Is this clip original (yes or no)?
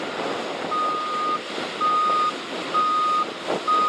yes